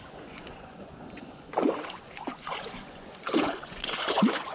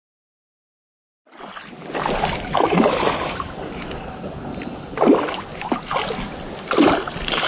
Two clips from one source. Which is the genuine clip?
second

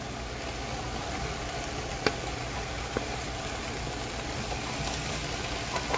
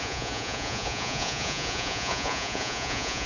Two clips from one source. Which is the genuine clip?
first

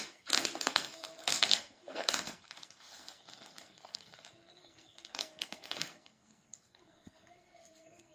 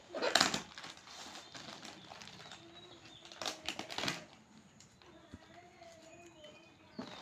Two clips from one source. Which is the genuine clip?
second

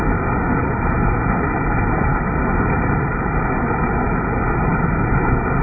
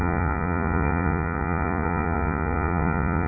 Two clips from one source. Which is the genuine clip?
first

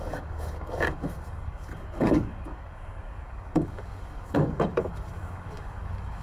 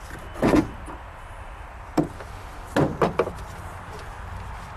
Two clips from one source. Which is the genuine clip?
second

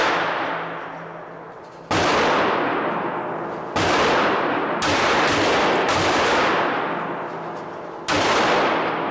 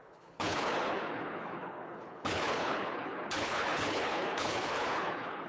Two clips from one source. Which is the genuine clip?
first